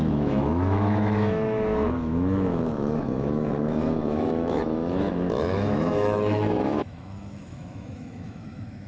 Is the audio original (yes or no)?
no